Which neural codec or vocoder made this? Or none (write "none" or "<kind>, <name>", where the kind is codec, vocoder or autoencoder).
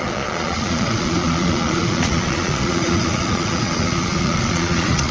vocoder, Vocos